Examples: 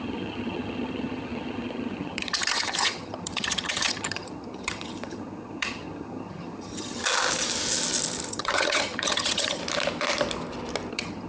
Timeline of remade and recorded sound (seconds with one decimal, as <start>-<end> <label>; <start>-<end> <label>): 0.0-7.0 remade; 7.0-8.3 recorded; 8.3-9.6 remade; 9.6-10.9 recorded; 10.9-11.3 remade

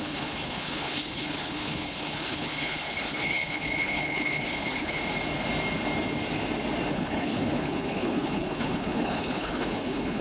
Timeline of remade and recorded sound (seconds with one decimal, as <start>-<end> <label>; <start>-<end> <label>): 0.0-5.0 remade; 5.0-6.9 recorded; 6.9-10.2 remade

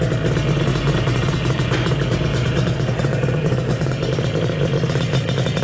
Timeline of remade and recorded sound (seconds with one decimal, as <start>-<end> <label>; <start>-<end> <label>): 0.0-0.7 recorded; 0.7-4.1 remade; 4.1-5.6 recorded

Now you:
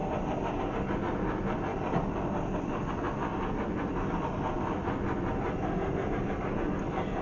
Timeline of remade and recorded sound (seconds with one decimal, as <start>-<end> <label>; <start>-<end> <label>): 0.0-7.2 recorded

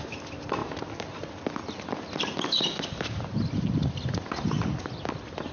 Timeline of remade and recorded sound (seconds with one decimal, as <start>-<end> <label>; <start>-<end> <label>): 0.0-5.5 recorded